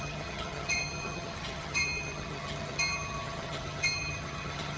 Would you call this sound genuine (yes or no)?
no